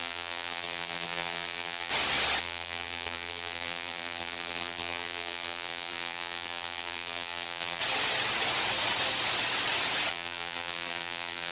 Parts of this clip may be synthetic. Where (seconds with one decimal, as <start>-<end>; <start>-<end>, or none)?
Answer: 0.0-1.9; 2.4-7.8; 10.1-11.5